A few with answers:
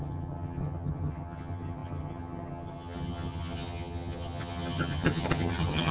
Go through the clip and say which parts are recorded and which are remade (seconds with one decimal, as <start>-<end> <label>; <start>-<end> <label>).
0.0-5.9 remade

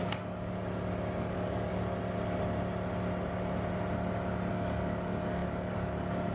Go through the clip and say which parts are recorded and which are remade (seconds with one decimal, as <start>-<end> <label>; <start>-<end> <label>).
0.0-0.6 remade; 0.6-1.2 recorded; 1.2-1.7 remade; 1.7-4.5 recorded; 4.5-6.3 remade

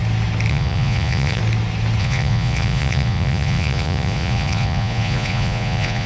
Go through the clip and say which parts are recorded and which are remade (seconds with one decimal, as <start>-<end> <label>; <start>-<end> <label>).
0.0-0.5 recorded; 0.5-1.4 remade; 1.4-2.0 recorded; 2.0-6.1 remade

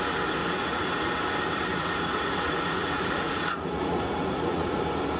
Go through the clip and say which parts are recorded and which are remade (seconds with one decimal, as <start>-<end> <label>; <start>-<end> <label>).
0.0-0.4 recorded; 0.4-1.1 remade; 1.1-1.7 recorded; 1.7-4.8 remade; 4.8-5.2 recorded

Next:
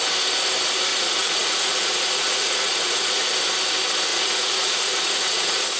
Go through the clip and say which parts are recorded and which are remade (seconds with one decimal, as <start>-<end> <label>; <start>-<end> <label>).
0.0-0.9 recorded; 0.9-3.3 remade; 3.3-4.1 recorded; 4.1-5.8 remade

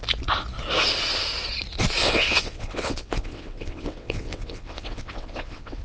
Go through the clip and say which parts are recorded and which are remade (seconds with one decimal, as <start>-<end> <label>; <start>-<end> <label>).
0.0-2.0 recorded; 2.0-5.8 remade

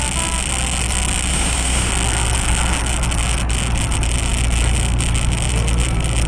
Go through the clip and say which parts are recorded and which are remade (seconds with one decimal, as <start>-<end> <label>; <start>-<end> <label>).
0.0-1.3 recorded; 1.3-1.9 remade; 1.9-6.3 recorded

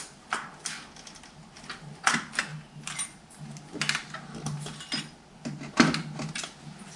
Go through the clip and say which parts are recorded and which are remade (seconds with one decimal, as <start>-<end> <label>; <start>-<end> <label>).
0.0-2.5 recorded; 2.5-3.4 remade; 3.4-7.0 recorded